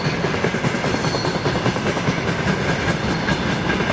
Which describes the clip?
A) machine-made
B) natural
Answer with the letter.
B